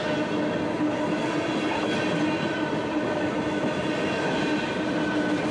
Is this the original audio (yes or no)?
yes